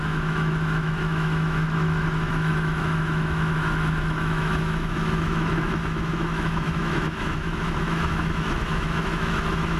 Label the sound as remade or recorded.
remade